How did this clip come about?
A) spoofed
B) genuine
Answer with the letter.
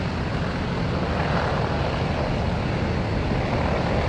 B